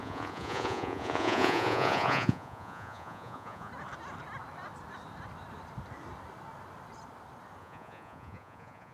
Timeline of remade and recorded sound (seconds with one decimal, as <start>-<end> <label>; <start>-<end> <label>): 0.0-3.7 remade; 3.7-7.6 recorded; 7.6-8.9 remade